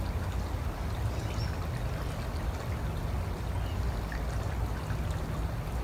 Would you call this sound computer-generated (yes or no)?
no